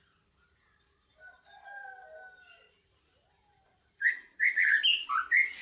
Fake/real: real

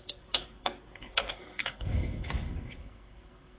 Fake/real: fake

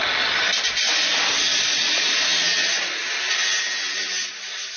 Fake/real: real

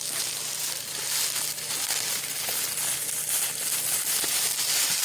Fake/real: real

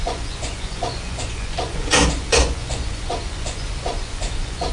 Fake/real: fake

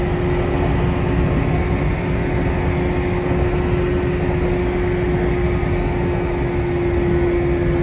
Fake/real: real